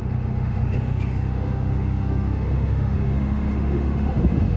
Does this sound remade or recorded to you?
remade